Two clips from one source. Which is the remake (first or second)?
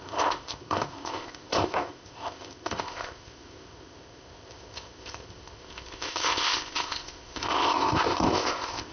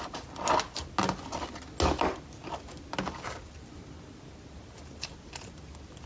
first